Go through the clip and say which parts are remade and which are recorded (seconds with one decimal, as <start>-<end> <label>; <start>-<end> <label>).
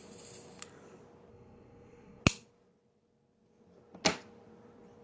0.0-1.3 recorded; 1.3-2.2 remade; 2.2-5.0 recorded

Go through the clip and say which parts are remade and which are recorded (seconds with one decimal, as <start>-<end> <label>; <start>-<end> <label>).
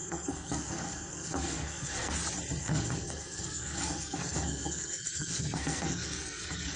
0.0-2.1 remade; 2.1-2.6 recorded; 2.6-6.8 remade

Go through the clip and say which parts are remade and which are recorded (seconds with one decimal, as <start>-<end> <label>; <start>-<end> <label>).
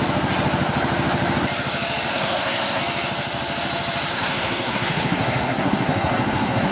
0.0-2.1 recorded; 2.1-2.8 remade; 2.8-4.1 recorded; 4.1-6.7 remade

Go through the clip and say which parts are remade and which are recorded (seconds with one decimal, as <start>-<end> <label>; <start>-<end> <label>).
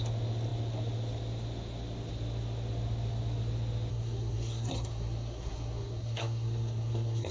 0.0-3.9 recorded; 3.9-7.3 remade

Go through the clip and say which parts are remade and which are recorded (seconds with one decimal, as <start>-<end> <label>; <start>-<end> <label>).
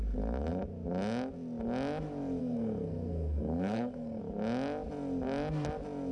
0.0-2.4 recorded; 2.4-4.2 remade; 4.2-6.1 recorded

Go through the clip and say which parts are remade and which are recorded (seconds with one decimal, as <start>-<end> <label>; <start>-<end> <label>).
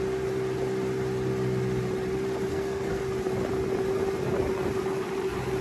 0.0-2.5 recorded; 2.5-3.0 remade; 3.0-5.6 recorded